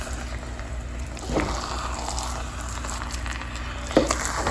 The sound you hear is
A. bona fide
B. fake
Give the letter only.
A